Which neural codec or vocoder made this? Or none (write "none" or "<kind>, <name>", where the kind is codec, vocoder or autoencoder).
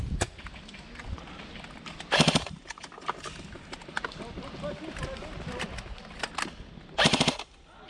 none